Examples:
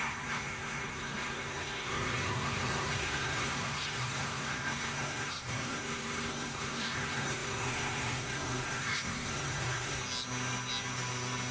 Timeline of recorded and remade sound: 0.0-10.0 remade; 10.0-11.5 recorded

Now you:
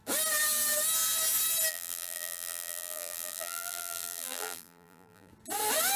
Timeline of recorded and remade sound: 0.0-1.7 recorded; 1.7-5.3 remade; 5.3-6.0 recorded

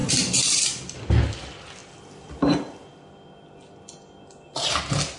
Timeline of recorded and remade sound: 0.0-5.2 recorded

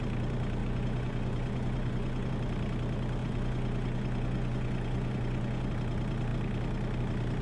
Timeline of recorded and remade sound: 0.0-0.6 recorded; 0.6-2.3 remade; 2.3-3.2 recorded; 3.2-5.7 remade; 5.7-7.4 recorded

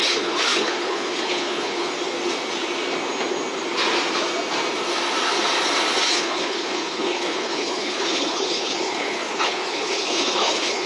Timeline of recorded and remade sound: 0.0-1.9 remade; 1.9-6.1 recorded; 6.1-10.9 remade

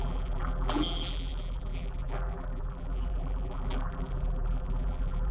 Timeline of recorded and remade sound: 0.0-5.3 remade

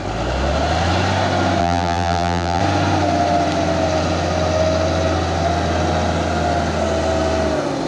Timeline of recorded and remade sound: 0.0-1.6 recorded; 1.6-2.6 remade; 2.6-7.9 recorded